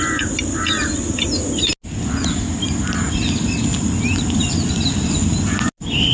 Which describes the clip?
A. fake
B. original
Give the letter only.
B